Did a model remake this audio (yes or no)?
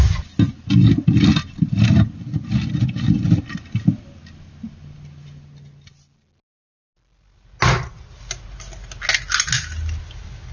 no